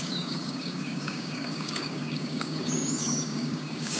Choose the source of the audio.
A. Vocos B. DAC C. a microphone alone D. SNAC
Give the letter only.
B